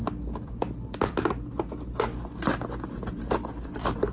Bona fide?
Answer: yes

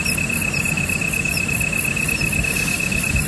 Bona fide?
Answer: yes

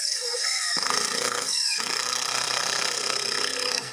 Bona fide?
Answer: no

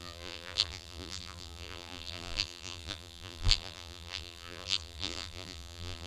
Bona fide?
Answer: no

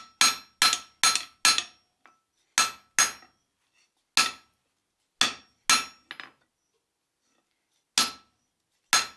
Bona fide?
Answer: yes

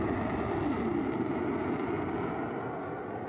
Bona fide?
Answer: yes